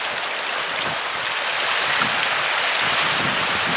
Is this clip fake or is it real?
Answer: real